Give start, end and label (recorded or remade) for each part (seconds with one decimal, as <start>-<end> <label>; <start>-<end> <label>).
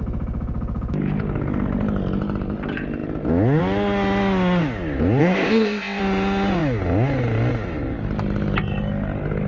0.0-5.2 recorded; 5.2-6.0 remade; 6.0-9.5 recorded